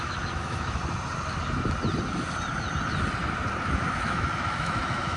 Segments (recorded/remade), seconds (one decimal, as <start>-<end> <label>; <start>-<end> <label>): 0.0-0.8 remade; 0.8-3.9 recorded; 3.9-5.2 remade